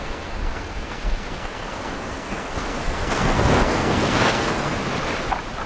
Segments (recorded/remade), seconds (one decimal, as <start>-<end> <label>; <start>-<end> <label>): 0.0-4.8 remade; 4.8-5.7 recorded